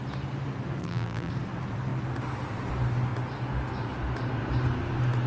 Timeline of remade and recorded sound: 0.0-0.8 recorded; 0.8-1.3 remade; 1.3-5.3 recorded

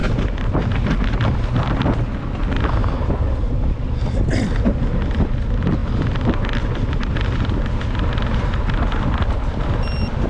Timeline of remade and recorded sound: 0.0-2.8 recorded; 2.8-5.2 remade; 5.2-10.3 recorded

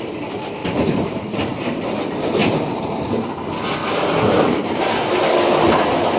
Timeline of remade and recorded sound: 0.0-0.6 recorded; 0.6-1.8 remade; 1.8-2.4 recorded; 2.4-3.1 remade; 3.1-3.8 recorded; 3.8-4.8 remade; 4.8-6.2 recorded

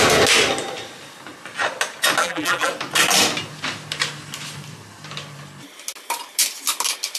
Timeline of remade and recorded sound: 0.0-2.2 recorded; 2.2-2.7 remade; 2.7-7.2 recorded

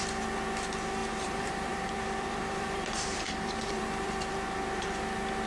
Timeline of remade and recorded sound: 0.0-1.0 recorded; 1.0-4.3 remade; 4.3-5.5 recorded

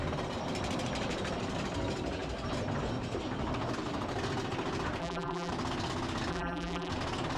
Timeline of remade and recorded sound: 0.0-5.0 recorded; 5.0-5.5 remade; 5.5-6.3 recorded; 6.3-6.9 remade; 6.9-7.4 recorded

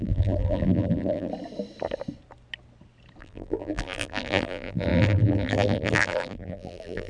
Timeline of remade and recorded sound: 0.0-1.3 remade; 1.3-3.2 recorded; 3.2-7.1 remade

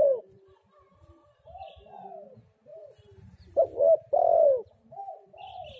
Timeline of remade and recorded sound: 0.0-1.8 remade; 1.8-2.7 recorded; 2.7-5.8 remade